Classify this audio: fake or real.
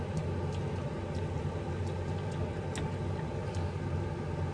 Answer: real